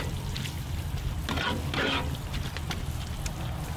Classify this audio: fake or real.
real